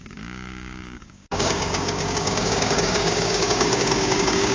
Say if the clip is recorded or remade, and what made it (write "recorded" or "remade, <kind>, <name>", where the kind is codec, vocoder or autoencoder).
remade, codec, DAC